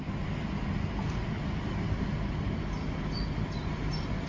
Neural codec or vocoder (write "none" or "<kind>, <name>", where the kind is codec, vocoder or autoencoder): none